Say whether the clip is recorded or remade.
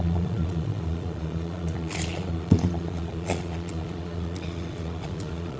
remade